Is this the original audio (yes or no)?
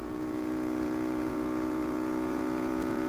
no